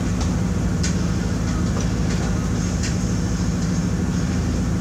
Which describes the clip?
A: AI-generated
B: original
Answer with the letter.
A